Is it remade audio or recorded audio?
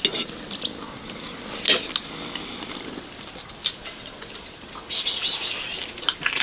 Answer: recorded